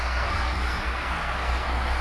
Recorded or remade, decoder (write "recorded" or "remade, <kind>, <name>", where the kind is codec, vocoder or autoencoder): remade, codec, SNAC